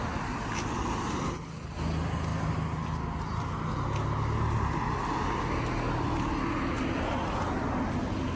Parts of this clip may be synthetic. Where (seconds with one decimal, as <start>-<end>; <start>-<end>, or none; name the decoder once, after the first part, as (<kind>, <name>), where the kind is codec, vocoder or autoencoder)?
none